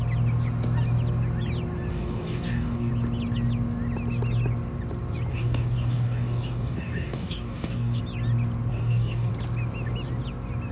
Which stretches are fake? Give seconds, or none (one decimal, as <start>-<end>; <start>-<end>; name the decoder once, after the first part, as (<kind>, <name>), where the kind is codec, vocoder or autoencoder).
1.9-2.9 (codec, DAC); 5.3-8.0; 8.7-9.3